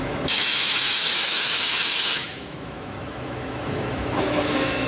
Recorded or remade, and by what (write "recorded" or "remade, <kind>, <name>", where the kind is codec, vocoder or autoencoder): remade, autoencoder, DAC-VAE